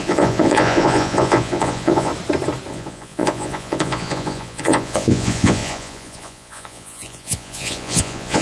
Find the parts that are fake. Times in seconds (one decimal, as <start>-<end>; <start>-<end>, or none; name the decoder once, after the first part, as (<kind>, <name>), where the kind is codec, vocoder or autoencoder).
0.0-2.1 (vocoder, Vocos); 2.7-8.4